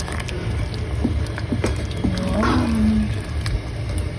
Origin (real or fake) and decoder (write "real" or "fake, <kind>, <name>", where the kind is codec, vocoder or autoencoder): real